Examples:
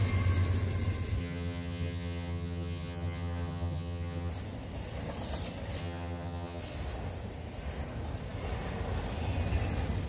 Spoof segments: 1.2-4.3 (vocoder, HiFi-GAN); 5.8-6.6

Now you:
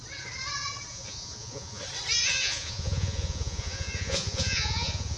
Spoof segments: 0.9-1.8 (vocoder, Vocos); 2.2-5.2

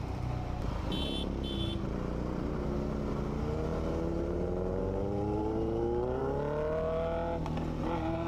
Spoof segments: none